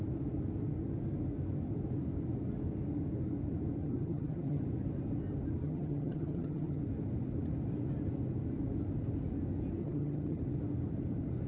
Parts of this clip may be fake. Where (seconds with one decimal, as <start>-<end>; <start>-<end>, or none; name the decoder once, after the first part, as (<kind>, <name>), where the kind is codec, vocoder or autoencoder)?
3.8-4.6 (vocoder, HiFi-GAN); 5.6-6.8; 9.8-10.4